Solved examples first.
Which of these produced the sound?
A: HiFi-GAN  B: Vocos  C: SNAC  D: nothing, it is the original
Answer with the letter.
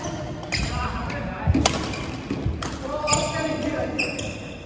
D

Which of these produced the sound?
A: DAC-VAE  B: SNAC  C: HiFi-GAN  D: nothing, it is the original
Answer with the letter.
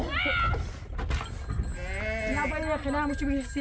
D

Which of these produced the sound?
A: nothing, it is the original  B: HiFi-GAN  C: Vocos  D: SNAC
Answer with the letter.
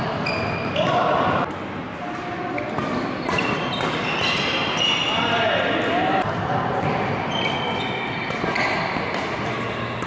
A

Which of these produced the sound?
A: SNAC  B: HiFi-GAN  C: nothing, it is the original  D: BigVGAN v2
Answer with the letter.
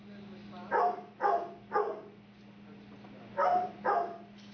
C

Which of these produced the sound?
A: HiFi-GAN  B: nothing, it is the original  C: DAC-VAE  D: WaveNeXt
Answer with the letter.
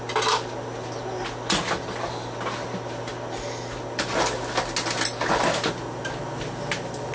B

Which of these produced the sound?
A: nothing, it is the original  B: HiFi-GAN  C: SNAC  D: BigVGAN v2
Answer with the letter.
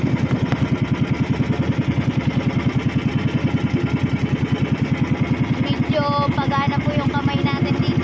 A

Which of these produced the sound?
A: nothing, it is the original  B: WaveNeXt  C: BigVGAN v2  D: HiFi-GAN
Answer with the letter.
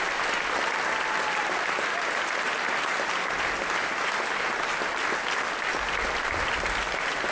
A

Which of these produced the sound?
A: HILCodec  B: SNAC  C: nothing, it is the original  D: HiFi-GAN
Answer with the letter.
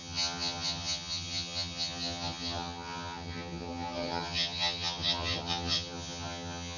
D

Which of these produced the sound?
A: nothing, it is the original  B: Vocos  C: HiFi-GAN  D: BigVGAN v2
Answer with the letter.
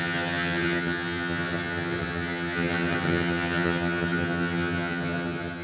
C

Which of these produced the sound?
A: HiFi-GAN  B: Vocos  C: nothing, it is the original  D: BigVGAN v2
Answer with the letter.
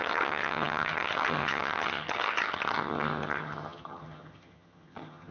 A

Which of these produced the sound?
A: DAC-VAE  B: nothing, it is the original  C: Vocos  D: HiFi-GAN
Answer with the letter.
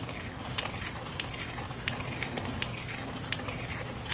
B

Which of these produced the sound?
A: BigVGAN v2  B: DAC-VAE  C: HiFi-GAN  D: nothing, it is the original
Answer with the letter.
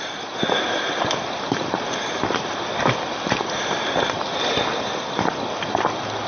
D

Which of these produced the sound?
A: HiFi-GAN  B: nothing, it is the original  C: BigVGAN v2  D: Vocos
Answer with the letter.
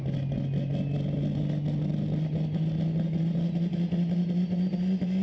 B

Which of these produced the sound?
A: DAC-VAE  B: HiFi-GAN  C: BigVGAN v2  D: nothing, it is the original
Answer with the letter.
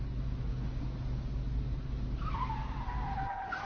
D